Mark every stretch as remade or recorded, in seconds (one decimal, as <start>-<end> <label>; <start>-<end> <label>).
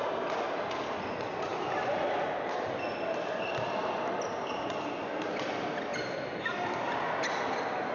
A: 0.0-7.9 recorded